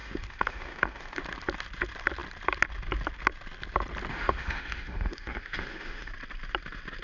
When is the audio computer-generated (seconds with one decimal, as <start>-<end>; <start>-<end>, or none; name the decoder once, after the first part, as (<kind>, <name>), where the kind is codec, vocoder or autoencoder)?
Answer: 0.0-1.2 (autoencoder, DAC-VAE); 4.1-6.1